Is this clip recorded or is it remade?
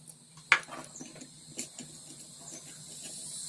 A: recorded